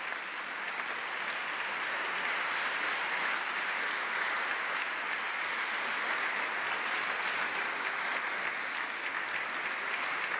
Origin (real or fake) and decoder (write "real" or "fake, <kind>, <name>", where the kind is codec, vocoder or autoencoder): real